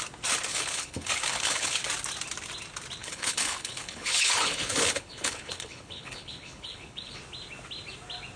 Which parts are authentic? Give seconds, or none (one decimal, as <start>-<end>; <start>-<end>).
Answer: 0.0-0.5; 1.8-3.0; 7.2-8.4